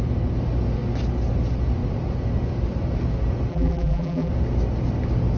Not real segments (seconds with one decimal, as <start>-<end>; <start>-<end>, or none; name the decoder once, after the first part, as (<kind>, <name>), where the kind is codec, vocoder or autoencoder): 3.5-4.3 (vocoder, BigVGAN v2)